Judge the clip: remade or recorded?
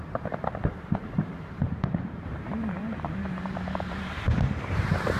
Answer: remade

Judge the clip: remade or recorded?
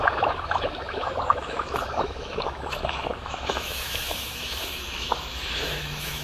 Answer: remade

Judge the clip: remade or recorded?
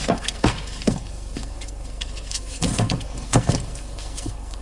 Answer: remade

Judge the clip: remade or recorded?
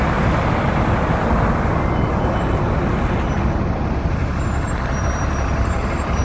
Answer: recorded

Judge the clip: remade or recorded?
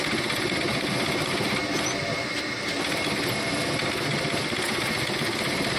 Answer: recorded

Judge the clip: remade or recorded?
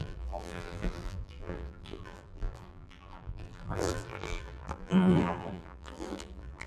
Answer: remade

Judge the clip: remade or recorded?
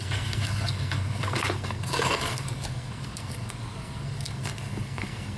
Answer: remade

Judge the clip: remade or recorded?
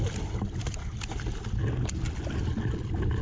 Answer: recorded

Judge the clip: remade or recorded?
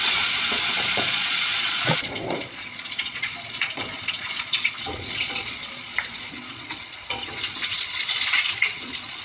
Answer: remade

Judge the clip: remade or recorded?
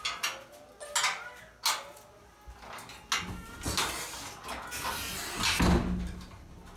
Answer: recorded